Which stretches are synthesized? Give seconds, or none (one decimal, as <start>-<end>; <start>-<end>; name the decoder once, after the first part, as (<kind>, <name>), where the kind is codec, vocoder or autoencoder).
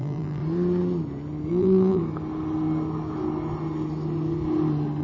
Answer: 0.0-0.4 (vocoder, BigVGAN v2); 1.5-2.0